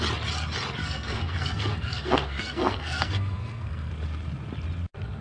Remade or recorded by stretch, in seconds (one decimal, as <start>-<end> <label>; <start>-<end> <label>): 0.0-0.8 recorded; 0.8-3.9 remade; 3.9-5.2 recorded